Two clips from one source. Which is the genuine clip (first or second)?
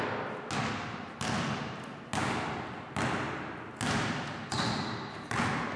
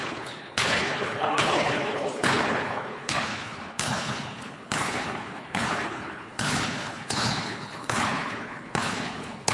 first